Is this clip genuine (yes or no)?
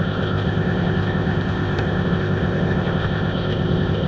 no